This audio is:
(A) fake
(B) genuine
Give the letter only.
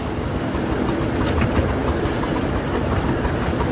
B